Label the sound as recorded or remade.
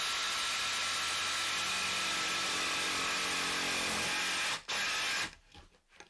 recorded